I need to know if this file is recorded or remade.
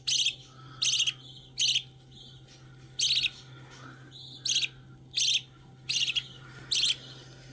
recorded